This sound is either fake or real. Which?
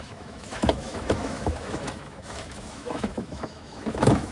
fake